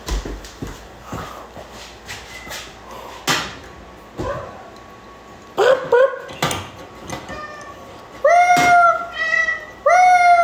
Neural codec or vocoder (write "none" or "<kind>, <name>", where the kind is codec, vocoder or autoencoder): none